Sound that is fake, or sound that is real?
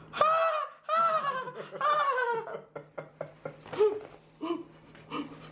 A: real